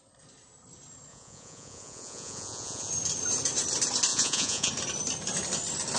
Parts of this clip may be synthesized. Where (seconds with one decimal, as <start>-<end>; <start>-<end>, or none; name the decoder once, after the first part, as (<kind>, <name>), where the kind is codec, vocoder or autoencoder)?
1.1-2.9 (vocoder, Vocos); 4.1-4.7